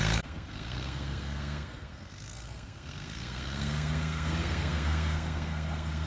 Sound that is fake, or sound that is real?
fake